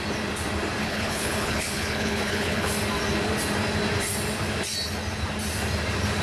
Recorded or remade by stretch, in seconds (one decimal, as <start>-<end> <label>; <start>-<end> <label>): 0.0-0.8 recorded; 0.8-2.7 remade; 2.7-6.2 recorded